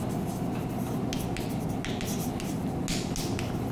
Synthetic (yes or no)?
no